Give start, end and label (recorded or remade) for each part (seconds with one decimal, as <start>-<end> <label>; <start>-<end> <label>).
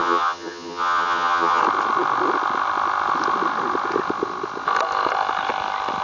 0.0-1.6 remade; 1.6-6.0 recorded